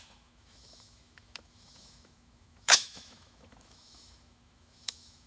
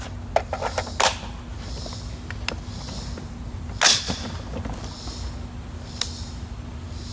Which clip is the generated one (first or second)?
first